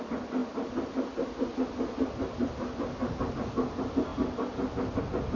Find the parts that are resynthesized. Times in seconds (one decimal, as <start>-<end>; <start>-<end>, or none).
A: none